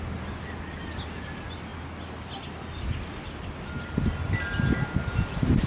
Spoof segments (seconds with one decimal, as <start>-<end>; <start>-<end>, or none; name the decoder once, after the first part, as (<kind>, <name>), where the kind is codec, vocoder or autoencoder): none